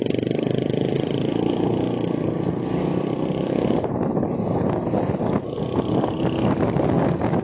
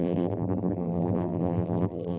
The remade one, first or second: second